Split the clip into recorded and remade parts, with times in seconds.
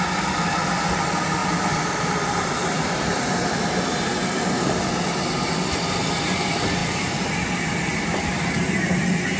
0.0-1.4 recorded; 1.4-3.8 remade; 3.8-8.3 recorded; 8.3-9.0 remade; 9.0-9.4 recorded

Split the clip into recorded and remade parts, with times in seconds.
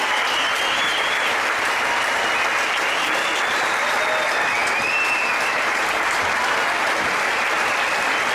0.0-4.9 recorded; 4.9-5.8 remade; 5.8-8.3 recorded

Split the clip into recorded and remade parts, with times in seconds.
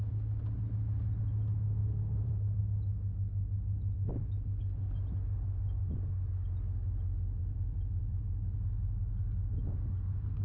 0.0-1.8 recorded; 1.8-2.6 remade; 2.6-7.4 recorded; 7.4-8.2 remade; 8.2-10.4 recorded